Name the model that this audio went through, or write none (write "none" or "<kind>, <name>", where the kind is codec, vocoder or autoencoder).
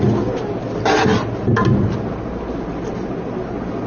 none